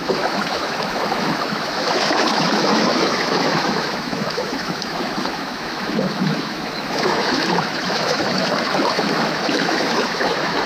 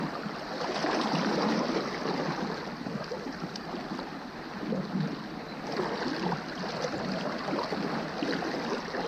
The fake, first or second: first